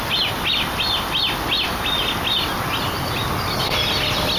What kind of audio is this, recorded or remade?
recorded